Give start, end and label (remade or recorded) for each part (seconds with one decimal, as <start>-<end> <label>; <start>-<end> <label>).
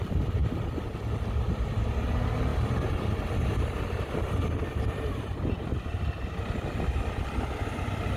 0.0-0.4 recorded; 0.4-1.7 remade; 1.7-2.5 recorded; 2.5-6.4 remade; 6.4-8.2 recorded